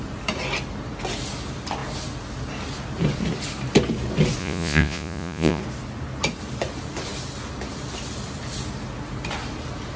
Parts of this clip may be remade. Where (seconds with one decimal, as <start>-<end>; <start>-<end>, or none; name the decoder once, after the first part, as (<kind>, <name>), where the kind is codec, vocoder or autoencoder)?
4.4-5.6 (vocoder, Vocos)